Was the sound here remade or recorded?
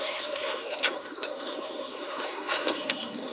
remade